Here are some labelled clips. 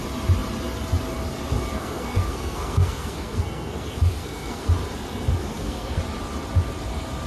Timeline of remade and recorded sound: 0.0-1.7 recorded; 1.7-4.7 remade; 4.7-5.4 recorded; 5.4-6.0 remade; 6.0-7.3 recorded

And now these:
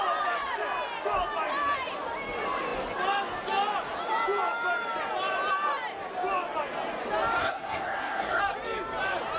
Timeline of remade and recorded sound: 0.0-7.4 recorded; 7.4-8.4 remade; 8.4-9.4 recorded

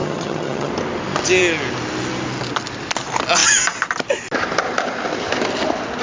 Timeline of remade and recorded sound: 0.0-0.7 remade; 0.7-6.0 recorded

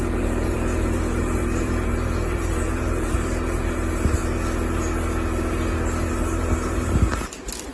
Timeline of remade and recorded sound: 0.0-4.2 remade; 4.2-6.1 recorded; 6.1-7.7 remade

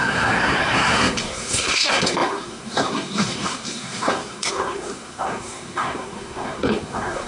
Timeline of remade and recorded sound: 0.0-7.3 remade

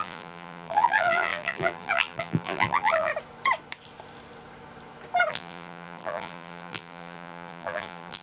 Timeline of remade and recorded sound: 0.0-3.1 remade; 3.1-5.3 recorded; 5.3-8.2 remade

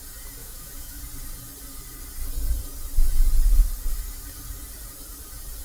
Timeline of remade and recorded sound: 0.0-0.4 recorded; 0.4-1.0 remade; 1.0-5.6 recorded

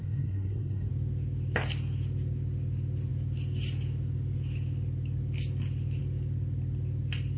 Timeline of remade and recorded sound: 0.0-0.9 remade; 0.9-7.4 recorded